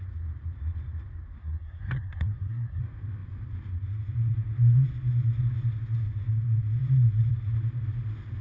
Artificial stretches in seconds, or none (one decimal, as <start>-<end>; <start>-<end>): 1.4-2.8

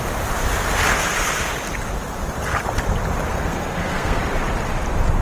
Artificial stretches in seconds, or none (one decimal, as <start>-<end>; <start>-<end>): 3.3-4.2

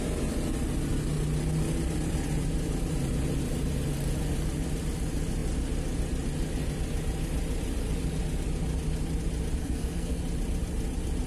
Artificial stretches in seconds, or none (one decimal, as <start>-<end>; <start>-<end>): 9.6-10.2

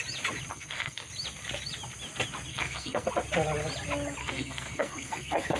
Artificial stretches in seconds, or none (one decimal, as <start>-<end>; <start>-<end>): 0.5-1.1; 2.5-3.1; 4.2-5.6

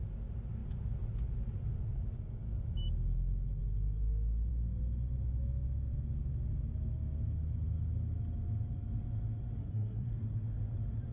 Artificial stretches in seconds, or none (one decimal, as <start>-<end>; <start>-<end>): 9.6-10.1

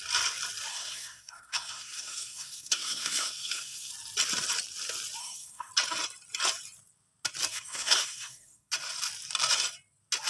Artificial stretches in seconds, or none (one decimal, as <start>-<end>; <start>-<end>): 0.7-3.9; 5.2-5.7; 7.5-8.7